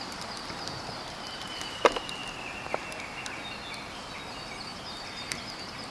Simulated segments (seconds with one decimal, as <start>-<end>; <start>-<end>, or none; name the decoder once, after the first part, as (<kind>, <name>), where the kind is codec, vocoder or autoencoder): 0.0-2.2 (vocoder, BigVGAN v2); 4.6-5.9